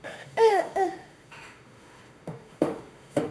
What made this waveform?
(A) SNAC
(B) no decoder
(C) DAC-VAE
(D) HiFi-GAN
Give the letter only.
C